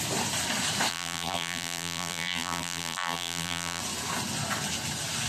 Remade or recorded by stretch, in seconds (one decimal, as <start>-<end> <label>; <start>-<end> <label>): 0.0-0.9 recorded; 0.9-3.8 remade; 3.8-5.3 recorded